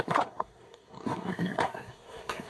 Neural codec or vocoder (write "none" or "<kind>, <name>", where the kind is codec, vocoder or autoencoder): codec, SNAC